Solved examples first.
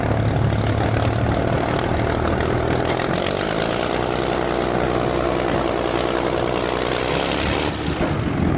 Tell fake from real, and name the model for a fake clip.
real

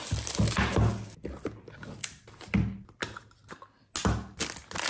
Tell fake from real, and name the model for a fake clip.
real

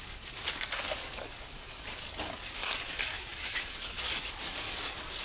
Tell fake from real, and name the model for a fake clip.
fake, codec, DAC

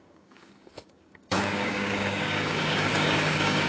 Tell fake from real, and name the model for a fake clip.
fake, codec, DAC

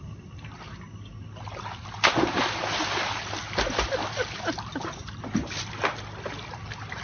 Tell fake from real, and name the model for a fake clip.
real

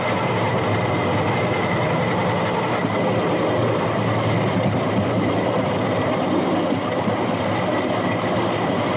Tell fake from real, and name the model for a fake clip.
real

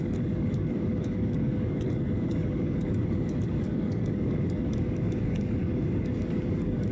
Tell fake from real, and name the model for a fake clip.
fake, codec, DAC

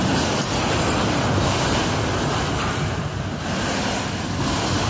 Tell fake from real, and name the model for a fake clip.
real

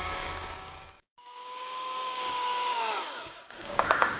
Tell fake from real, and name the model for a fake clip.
fake, codec, DAC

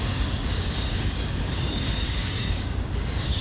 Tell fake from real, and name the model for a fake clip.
fake, codec, DAC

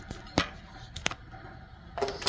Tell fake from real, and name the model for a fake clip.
real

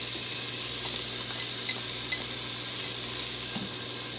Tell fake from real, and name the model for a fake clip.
real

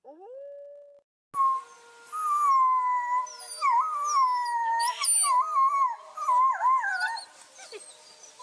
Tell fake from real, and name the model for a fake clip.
real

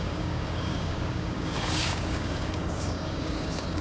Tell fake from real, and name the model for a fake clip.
fake, codec, DAC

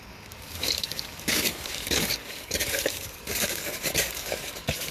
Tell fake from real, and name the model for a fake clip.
fake, codec, DAC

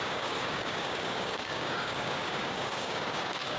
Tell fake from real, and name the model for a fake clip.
fake, codec, DAC